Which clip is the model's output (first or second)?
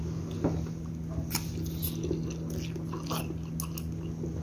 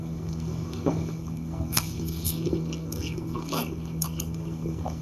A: second